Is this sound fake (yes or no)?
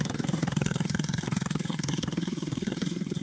yes